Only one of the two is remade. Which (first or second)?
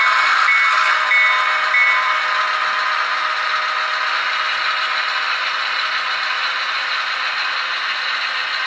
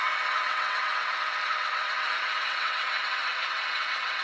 second